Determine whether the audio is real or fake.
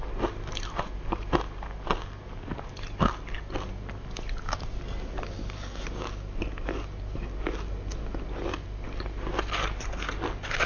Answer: real